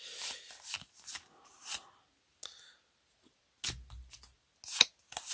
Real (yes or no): yes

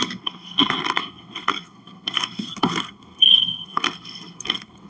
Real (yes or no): no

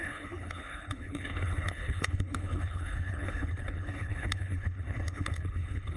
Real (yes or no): no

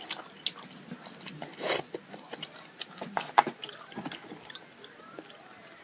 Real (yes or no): yes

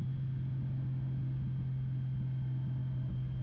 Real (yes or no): yes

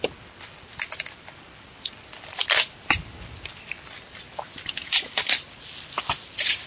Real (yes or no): yes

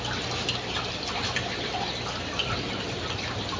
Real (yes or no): yes